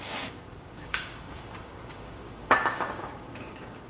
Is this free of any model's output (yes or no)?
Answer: no